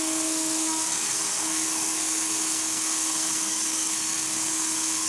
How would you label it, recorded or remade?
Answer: remade